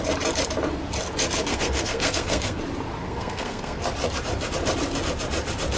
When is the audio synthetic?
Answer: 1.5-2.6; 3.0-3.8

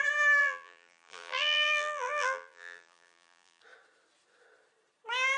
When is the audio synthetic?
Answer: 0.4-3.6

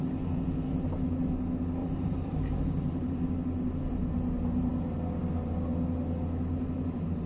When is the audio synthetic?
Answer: 1.8-3.3

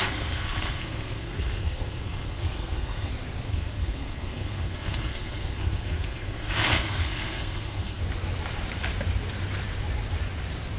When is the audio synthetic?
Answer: 0.0-3.1; 3.5-8.0

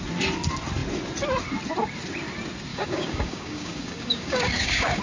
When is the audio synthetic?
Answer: 2.7-5.0